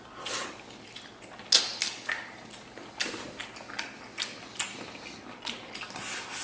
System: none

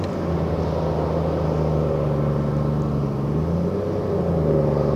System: none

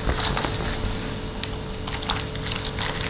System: none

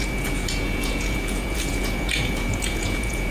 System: vocoder, Vocos